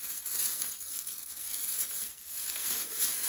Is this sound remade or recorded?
remade